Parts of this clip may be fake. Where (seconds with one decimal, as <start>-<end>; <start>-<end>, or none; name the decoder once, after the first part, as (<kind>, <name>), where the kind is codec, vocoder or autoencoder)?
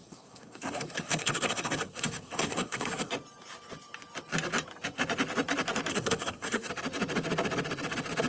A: 0.0-3.1 (codec, SNAC); 5.9-6.7